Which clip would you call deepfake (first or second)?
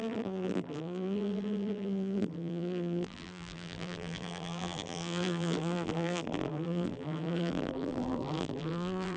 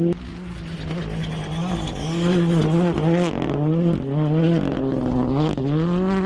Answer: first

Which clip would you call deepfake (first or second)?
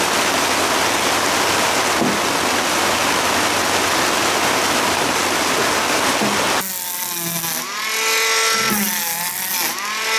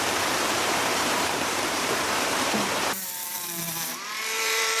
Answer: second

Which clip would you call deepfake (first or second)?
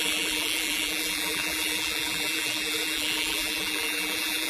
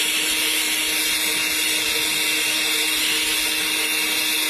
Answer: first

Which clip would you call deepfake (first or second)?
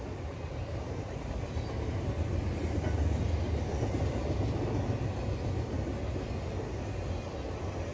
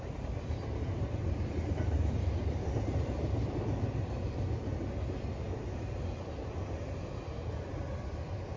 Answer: second